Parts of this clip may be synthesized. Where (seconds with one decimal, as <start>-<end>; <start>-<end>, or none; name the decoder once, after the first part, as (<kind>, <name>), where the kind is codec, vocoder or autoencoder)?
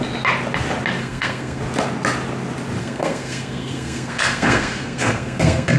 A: 1.0-1.6 (codec, SNAC); 2.8-5.8